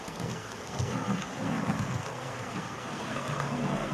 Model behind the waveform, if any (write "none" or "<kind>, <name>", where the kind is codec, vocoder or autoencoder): codec, SNAC